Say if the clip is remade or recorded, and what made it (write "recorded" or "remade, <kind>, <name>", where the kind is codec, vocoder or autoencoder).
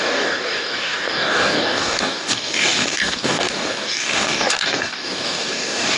remade, codec, DAC